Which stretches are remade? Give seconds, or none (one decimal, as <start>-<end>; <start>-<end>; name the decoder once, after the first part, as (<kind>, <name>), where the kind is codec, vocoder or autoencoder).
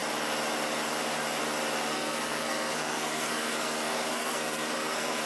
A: 1.9-5.3 (codec, SNAC)